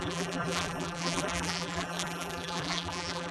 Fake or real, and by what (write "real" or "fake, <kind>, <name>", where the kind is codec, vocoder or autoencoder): fake, vocoder, BigVGAN v2